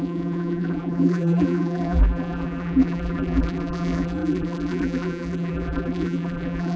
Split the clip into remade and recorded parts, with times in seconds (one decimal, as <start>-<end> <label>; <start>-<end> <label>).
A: 0.0-6.8 remade